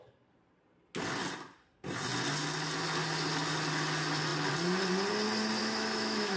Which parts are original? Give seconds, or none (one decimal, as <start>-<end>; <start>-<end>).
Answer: 0.0-5.6